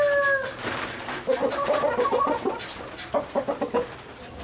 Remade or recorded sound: recorded